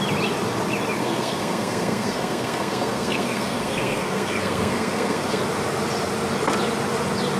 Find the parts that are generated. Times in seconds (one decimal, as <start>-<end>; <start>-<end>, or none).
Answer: 1.0-5.4